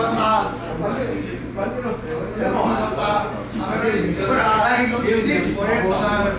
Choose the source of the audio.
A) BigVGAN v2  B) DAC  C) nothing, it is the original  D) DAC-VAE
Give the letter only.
C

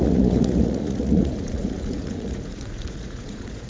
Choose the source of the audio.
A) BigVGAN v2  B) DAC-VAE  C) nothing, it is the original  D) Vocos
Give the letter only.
D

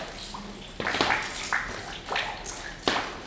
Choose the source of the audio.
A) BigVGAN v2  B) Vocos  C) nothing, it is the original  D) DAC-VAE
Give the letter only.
C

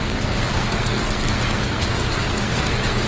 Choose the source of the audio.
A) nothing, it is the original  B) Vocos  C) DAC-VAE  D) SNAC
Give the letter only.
D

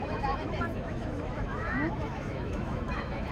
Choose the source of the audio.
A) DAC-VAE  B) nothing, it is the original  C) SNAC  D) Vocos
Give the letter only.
A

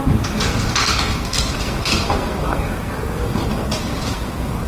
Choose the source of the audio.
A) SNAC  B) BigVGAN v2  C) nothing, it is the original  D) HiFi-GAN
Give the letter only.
A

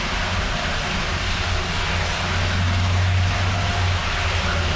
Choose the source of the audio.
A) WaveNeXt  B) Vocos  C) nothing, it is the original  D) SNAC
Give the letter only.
C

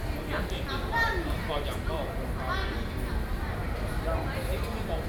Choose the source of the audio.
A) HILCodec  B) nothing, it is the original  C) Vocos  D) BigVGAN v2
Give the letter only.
B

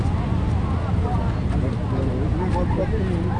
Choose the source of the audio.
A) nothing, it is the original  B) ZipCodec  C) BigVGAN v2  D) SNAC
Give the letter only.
A